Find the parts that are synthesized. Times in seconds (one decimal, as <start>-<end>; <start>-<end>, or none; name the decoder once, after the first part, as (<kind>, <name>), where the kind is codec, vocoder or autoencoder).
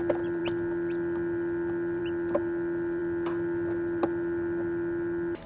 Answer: none